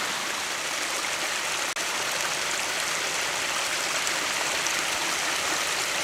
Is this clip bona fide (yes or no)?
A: yes